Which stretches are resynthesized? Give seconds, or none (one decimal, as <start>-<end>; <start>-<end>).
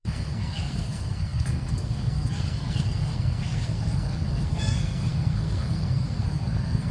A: 0.0-6.9